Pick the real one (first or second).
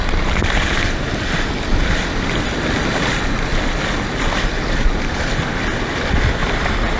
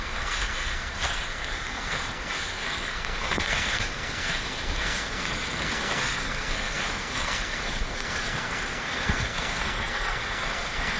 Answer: first